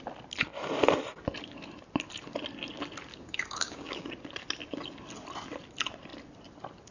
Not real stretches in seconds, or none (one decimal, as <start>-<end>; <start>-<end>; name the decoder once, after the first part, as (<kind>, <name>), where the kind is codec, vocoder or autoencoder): 3.1-4.1 (codec, DAC)